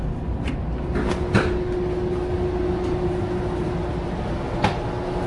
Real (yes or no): yes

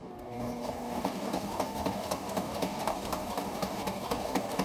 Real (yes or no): no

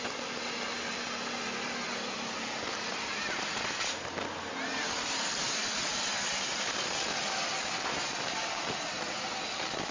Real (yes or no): yes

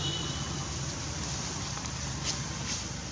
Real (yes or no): yes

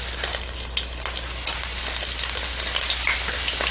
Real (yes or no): yes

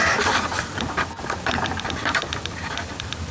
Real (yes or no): no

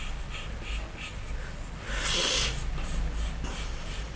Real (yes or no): yes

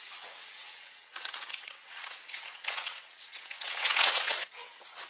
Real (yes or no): no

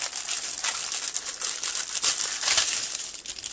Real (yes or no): yes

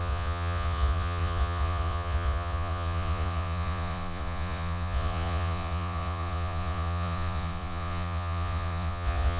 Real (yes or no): no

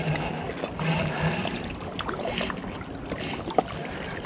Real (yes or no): yes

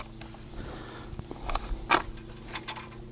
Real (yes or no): yes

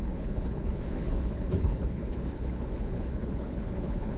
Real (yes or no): no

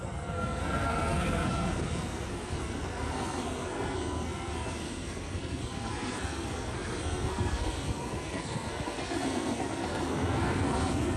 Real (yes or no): no